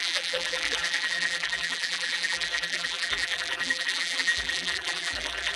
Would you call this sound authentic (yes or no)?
no